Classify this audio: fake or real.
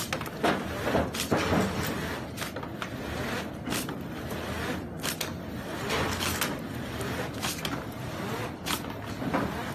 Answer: real